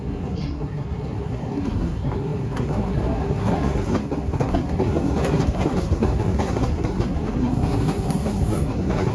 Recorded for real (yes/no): no